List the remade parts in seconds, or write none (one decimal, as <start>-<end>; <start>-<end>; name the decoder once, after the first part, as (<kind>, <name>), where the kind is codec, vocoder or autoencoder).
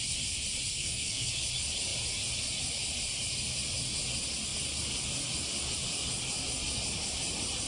0.7-1.3 (codec, SNAC)